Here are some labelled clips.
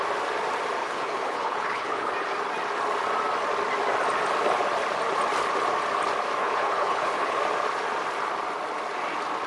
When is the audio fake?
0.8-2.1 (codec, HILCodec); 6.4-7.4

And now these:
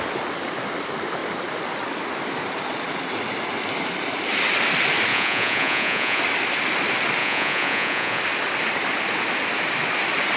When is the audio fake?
5.1-6.2 (vocoder, Vocos); 7.2-8.2

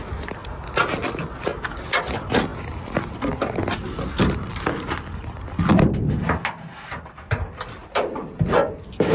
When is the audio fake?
7.8-8.7 (vocoder, BigVGAN v2)

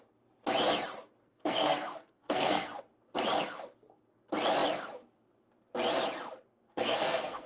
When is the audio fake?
1.2-2.8 (codec, SNAC); 6.5-7.5